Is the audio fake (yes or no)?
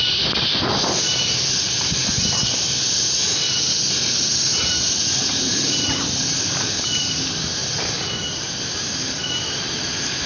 no